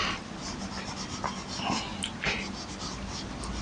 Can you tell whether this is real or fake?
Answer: real